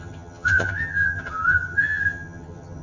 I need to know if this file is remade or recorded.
remade